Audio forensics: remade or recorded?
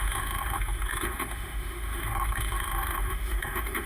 remade